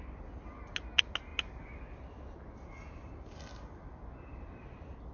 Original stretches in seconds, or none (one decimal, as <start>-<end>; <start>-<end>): 0.0-5.1